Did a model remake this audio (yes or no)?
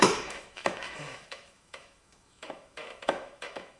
yes